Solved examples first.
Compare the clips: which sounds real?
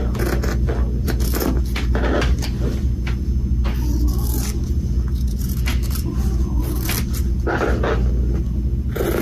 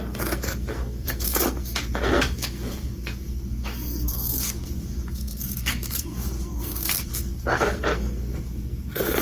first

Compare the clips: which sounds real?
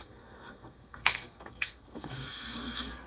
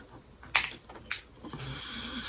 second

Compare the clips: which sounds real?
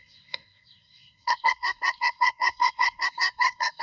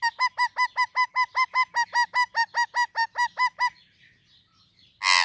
second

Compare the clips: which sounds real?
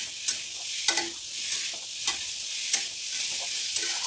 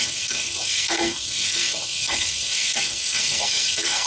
first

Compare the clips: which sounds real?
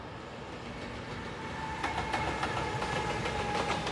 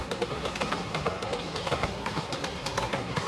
first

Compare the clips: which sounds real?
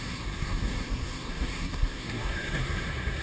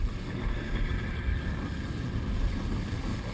second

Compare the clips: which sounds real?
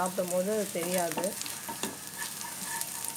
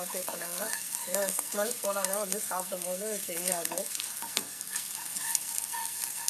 first